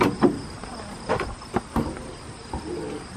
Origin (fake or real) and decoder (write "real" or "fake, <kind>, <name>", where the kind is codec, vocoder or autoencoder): real